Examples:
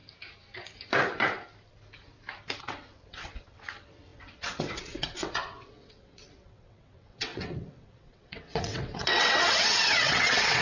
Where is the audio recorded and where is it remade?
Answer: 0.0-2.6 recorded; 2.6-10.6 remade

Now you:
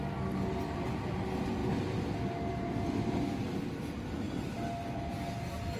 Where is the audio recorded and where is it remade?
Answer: 0.0-5.8 recorded

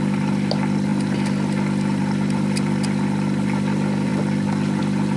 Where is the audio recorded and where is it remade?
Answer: 0.0-5.2 recorded

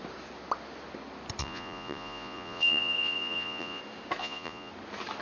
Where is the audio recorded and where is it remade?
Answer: 0.0-1.4 recorded; 1.4-3.8 remade; 3.8-4.2 recorded; 4.2-4.7 remade; 4.7-5.2 recorded